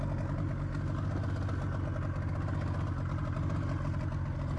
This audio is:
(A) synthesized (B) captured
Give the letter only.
B